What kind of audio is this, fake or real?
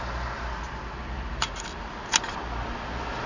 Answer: real